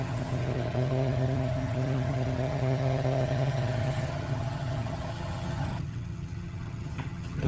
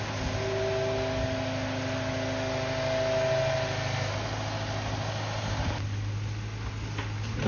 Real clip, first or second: second